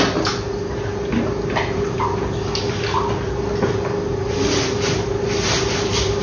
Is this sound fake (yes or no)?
no